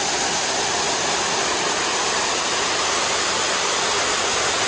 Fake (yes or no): no